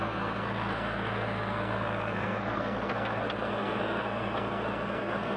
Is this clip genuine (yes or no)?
no